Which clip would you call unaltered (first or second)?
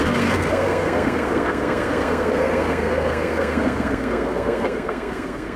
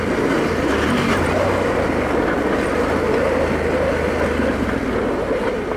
second